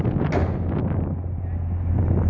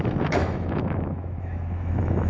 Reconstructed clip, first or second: second